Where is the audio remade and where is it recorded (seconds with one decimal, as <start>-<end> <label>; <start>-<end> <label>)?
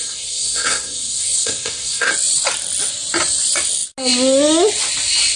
0.0-2.1 remade; 2.1-5.4 recorded